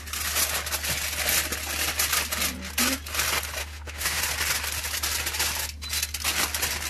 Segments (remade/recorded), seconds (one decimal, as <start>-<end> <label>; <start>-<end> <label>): 0.0-3.6 recorded; 3.6-4.2 remade; 4.2-6.9 recorded